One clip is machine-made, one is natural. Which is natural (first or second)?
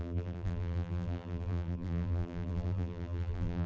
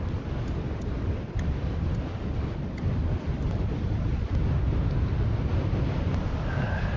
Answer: second